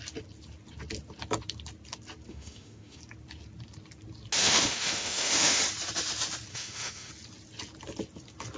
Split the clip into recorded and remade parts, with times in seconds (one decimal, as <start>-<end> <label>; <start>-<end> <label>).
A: 0.0-2.3 recorded; 2.3-3.0 remade; 3.0-4.4 recorded; 4.4-5.6 remade; 5.6-6.5 recorded; 6.5-7.1 remade; 7.1-8.6 recorded